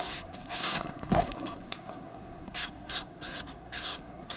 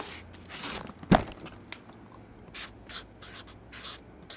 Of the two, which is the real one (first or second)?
second